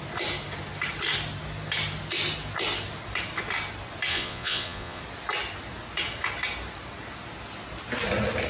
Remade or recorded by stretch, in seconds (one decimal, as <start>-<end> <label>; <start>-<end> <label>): 0.0-4.1 recorded; 4.1-5.0 remade; 5.0-8.5 recorded